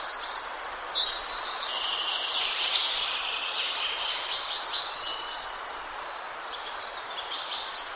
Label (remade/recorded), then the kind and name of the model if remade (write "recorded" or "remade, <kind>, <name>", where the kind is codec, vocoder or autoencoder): recorded